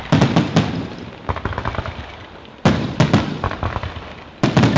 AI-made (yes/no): no